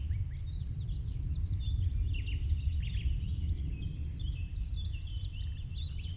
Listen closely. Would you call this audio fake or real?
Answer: real